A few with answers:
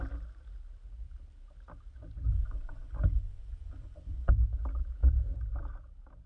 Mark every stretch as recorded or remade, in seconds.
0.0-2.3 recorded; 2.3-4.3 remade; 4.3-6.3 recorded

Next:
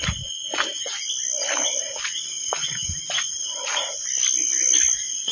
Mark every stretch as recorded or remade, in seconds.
0.0-5.3 recorded